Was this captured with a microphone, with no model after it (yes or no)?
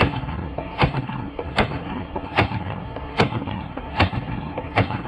no